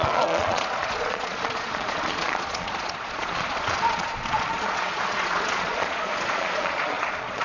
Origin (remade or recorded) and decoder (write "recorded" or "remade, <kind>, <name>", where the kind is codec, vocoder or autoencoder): remade, vocoder, Vocos